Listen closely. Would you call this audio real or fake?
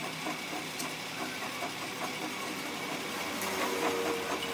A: real